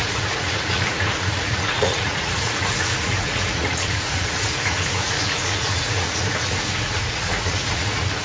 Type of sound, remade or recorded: remade